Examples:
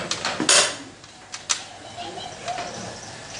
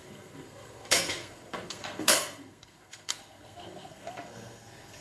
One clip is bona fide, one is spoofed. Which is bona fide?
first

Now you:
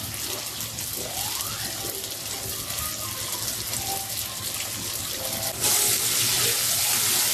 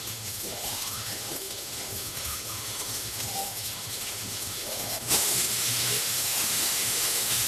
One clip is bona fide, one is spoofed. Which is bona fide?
first